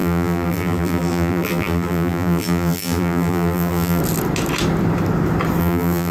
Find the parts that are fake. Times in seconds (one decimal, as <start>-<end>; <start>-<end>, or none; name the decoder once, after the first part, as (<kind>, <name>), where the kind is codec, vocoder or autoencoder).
0.0-4.0 (vocoder, BigVGAN v2); 5.6-6.1